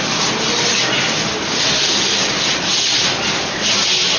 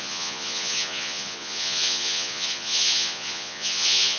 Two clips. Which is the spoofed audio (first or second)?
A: second